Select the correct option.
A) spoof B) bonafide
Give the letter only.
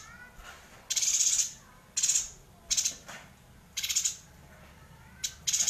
B